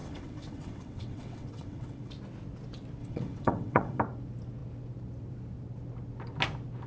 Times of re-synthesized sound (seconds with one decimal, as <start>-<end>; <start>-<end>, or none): 0.0-2.1; 3.0-4.0